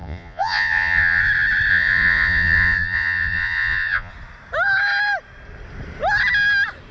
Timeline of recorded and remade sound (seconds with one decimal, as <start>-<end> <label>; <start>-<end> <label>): 0.0-1.2 remade; 1.2-1.7 recorded; 1.7-4.1 remade; 4.1-6.9 recorded